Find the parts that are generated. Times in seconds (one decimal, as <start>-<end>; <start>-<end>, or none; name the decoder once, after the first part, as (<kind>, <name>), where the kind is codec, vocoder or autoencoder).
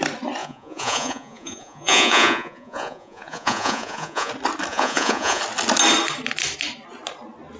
0.4-4.3 (vocoder, Vocos); 4.7-5.4